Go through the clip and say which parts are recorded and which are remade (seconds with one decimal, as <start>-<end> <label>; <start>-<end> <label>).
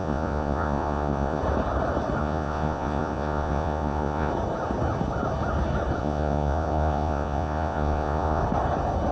0.0-1.4 remade; 1.4-2.2 recorded; 2.2-4.3 remade; 4.3-6.0 recorded; 6.0-8.4 remade; 8.4-9.1 recorded